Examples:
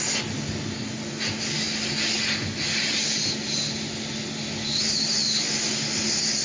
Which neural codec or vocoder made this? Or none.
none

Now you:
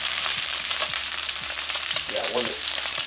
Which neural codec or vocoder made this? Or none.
vocoder, BigVGAN v2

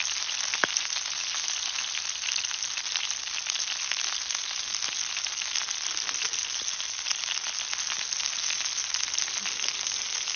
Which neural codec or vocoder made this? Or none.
none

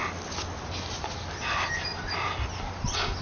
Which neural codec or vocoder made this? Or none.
none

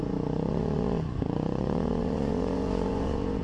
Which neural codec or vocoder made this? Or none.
vocoder, Vocos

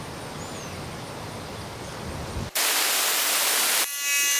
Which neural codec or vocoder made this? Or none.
none